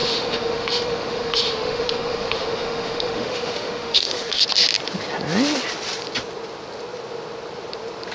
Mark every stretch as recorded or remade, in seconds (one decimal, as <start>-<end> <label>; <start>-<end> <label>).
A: 0.0-4.4 remade; 4.4-8.1 recorded